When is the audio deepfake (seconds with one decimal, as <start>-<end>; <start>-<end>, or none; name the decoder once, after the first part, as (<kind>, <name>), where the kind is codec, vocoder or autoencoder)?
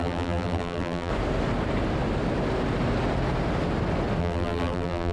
0.0-1.1 (vocoder, BigVGAN v2); 4.2-5.1